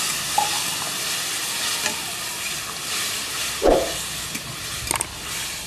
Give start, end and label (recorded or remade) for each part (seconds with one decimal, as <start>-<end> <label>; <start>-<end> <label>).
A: 0.0-5.7 recorded

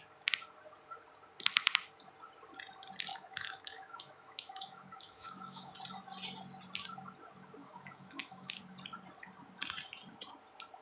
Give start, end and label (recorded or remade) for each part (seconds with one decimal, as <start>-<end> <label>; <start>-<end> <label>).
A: 0.0-3.1 recorded; 3.1-5.7 remade; 5.7-7.6 recorded; 7.6-8.6 remade; 8.6-10.8 recorded

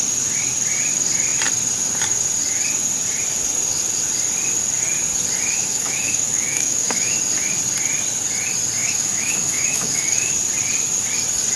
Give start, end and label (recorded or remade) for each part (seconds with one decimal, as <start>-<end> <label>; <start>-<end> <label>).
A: 0.0-5.6 recorded; 5.6-7.1 remade; 7.1-8.8 recorded; 8.8-10.3 remade; 10.3-11.6 recorded

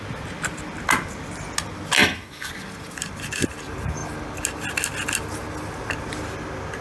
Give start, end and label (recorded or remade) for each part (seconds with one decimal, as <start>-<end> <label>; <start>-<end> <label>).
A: 0.0-2.0 recorded; 2.0-2.5 remade; 2.5-6.8 recorded

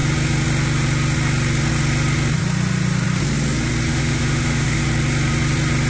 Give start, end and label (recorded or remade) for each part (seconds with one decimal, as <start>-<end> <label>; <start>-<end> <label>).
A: 0.0-3.9 recorded; 3.9-4.8 remade; 4.8-5.9 recorded

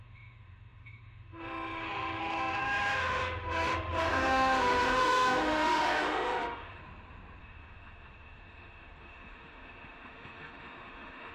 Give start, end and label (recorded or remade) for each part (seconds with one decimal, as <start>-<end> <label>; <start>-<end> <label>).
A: 0.0-6.8 remade; 6.8-7.4 recorded; 7.4-11.3 remade

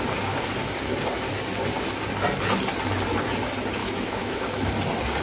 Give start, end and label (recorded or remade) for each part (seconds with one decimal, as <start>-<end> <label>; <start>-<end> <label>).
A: 0.0-3.8 recorded; 3.8-4.7 remade; 4.7-5.2 recorded

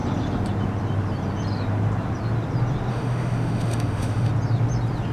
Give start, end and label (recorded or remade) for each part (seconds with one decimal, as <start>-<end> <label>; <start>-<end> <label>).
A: 0.0-2.9 recorded; 2.9-4.3 remade; 4.3-5.1 recorded